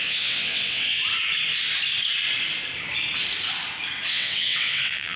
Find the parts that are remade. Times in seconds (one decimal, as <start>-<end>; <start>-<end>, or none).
0.0-1.0; 4.1-5.2